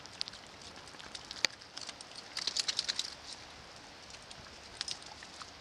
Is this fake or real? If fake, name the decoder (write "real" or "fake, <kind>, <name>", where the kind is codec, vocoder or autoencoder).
real